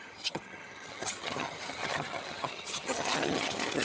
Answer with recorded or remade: remade